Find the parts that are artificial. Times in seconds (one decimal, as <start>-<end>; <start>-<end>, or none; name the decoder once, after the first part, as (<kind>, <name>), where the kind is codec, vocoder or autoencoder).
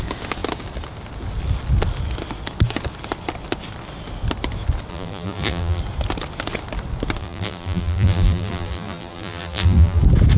4.9-5.8 (vocoder, BigVGAN v2); 7.2-10.0